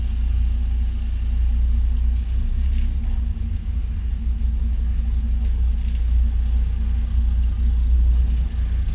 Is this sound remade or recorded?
recorded